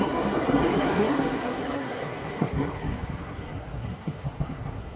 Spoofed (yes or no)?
yes